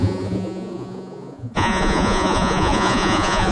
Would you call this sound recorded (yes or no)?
no